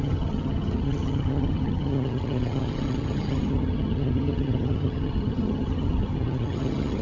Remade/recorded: remade